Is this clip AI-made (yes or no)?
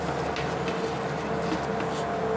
no